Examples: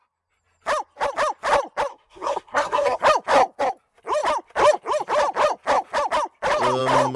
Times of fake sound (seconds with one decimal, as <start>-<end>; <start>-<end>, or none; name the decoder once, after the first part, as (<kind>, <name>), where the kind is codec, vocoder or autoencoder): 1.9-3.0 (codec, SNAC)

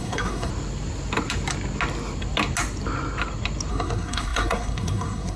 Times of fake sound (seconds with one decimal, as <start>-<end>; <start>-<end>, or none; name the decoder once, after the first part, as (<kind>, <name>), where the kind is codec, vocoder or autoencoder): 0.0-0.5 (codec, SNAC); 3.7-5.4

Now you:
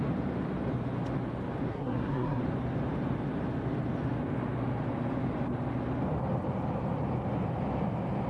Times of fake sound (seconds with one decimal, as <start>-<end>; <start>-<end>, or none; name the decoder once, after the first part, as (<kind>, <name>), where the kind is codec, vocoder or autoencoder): 1.7-2.4 (codec, SNAC)

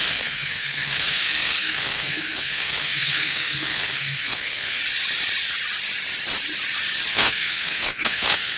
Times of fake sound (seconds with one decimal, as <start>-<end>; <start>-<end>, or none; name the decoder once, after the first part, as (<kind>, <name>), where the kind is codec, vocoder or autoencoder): 0.0-4.8 (codec, SNAC); 7.1-8.6

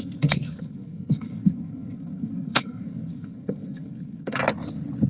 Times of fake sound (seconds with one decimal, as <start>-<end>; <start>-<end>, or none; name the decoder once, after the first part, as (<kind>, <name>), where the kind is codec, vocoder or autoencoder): 0.0-4.4 (codec, SNAC)